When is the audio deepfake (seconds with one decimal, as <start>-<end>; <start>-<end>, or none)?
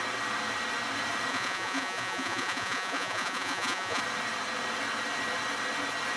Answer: 1.3-4.0